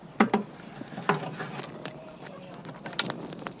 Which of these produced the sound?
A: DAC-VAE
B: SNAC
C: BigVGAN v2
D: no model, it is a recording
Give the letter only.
D